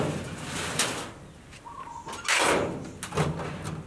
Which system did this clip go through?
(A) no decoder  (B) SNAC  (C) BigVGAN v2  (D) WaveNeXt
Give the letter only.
A